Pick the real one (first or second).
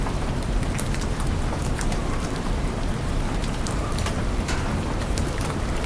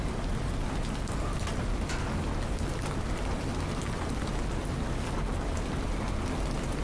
second